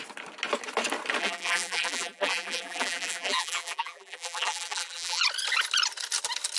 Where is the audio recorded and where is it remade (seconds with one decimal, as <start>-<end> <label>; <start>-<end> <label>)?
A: 0.0-1.2 recorded; 1.2-5.2 remade; 5.2-6.6 recorded